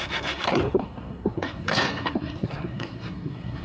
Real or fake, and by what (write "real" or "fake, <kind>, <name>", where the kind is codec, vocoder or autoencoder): fake, codec, SNAC